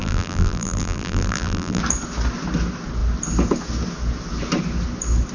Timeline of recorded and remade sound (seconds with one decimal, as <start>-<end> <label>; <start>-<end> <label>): 0.0-1.8 remade; 1.8-5.3 recorded